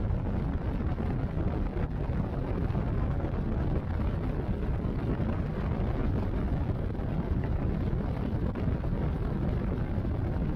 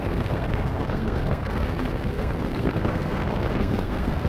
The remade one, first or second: second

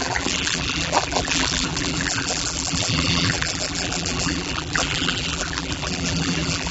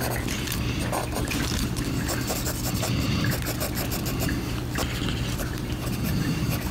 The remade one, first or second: first